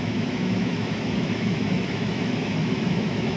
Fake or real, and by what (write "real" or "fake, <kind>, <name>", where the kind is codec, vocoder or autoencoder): fake, autoencoder, DAC-VAE